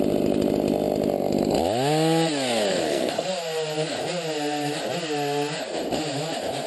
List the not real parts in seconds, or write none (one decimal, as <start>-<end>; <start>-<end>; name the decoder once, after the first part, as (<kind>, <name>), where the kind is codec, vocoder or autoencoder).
2.7-3.3 (codec, SNAC)